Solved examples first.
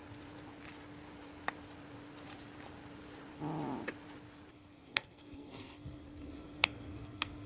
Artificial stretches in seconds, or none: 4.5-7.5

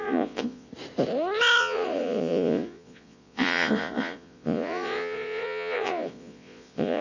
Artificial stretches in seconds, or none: 0.0-0.7; 1.6-7.0

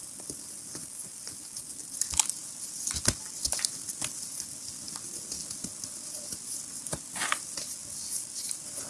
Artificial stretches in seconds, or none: none

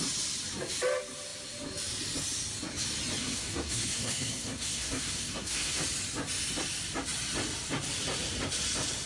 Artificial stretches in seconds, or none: 3.2-5.8